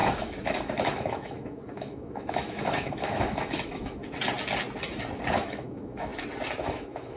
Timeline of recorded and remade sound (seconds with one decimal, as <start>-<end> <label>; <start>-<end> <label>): 0.0-4.0 remade; 4.0-5.3 recorded; 5.3-6.1 remade; 6.1-6.6 recorded; 6.6-7.2 remade